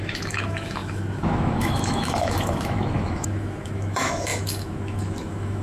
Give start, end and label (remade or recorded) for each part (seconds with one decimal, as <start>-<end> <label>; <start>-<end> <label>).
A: 0.0-5.6 remade